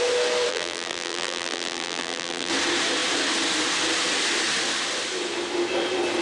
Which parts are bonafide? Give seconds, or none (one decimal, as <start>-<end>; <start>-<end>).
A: 0.0-0.5; 2.5-6.2